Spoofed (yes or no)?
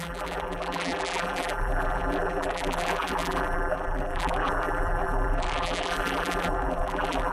yes